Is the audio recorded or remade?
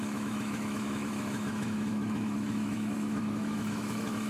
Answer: remade